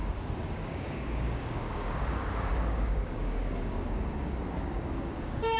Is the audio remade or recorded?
remade